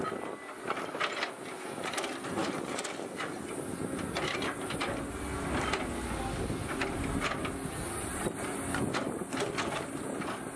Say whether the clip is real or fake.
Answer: real